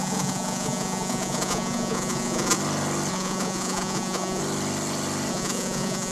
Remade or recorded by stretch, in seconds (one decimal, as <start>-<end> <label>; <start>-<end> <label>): 0.0-2.6 remade; 2.6-3.1 recorded; 3.1-4.4 remade; 4.4-5.3 recorded; 5.3-6.1 remade